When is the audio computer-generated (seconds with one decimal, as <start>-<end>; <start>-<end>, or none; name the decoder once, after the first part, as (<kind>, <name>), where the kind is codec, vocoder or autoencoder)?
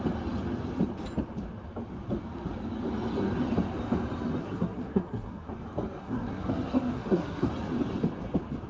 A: 4.4-5.5 (codec, SNAC); 6.0-7.5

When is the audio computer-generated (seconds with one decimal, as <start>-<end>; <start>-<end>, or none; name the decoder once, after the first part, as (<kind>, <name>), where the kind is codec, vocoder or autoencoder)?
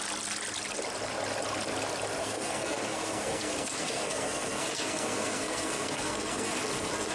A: 2.2-6.5 (codec, SNAC)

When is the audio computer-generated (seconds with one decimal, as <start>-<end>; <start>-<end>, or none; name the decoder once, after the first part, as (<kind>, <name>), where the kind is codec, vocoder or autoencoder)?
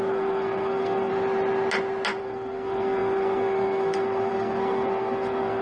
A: 0.0-1.1 (codec, SNAC); 2.2-5.6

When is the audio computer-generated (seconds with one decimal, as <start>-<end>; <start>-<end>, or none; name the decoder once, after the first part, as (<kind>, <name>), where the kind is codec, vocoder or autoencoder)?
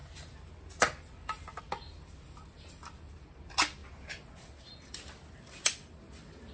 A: none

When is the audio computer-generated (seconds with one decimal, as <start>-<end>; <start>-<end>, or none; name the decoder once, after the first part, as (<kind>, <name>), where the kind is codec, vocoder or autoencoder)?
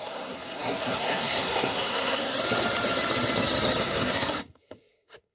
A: 0.0-2.3 (codec, SNAC); 3.8-5.3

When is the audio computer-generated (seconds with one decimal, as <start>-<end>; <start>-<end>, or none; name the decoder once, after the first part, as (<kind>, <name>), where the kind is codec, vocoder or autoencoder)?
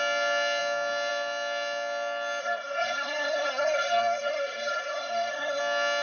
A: 2.4-5.6 (codec, SNAC)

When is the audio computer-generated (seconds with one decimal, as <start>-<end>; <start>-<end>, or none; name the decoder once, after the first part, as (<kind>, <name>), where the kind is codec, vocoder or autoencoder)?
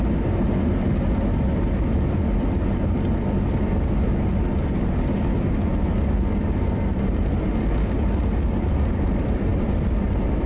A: none